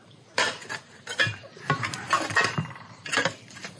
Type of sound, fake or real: fake